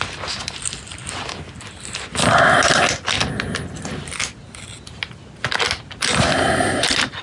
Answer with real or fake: real